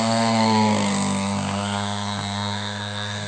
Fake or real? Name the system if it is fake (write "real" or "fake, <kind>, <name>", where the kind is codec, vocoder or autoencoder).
fake, codec, SNAC